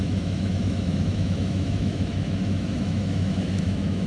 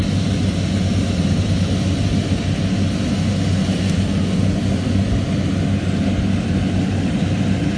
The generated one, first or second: first